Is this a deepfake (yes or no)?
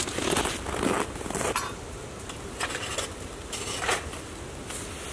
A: no